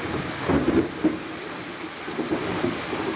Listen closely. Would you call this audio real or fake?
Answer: real